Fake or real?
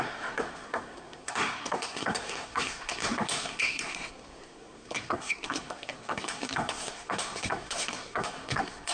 fake